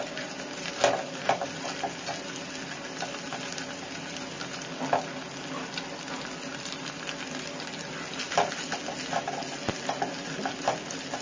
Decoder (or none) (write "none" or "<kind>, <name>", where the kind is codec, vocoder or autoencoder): none